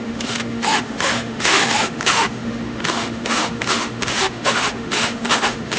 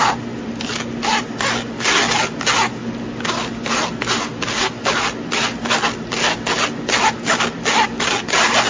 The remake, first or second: first